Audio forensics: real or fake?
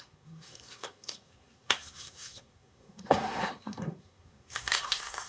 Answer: fake